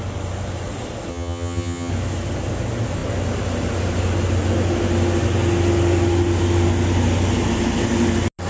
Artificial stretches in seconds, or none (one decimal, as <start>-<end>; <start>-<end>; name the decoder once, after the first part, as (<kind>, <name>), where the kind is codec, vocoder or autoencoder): 1.1-1.9 (vocoder, HiFi-GAN)

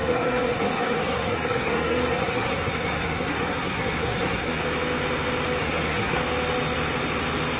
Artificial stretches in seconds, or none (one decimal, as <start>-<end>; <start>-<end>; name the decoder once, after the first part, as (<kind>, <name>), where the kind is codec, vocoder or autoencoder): 0.0-4.6 (codec, SNAC); 5.6-6.2

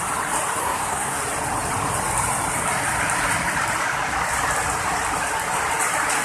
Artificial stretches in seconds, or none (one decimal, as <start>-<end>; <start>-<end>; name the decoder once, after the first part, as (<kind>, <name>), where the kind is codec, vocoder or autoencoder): 0.6-1.2 (codec, SNAC)

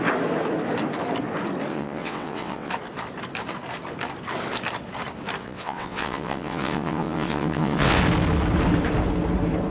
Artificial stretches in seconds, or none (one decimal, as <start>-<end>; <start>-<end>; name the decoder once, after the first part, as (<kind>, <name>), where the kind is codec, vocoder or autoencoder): 1.7-2.7 (vocoder, WaveNeXt); 5.4-8.0

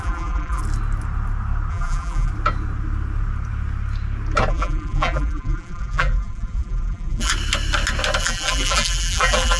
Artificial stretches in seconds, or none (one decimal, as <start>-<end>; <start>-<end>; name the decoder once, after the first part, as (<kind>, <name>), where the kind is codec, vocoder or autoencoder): 0.0-0.6 (vocoder, BigVGAN v2); 1.7-2.3; 4.5-7.3; 8.2-9.6

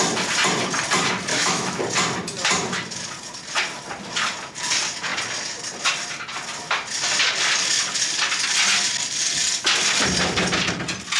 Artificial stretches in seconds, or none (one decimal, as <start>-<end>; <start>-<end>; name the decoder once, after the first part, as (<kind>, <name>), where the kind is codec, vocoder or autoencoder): 1.3-1.8 (autoencoder, DAC-VAE)

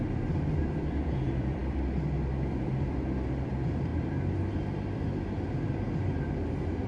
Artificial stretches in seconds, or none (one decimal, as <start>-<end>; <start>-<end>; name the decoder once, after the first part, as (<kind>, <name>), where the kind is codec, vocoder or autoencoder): 0.0-3.9 (vocoder, BigVGAN v2); 5.5-6.9